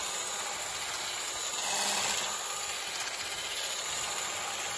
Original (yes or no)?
yes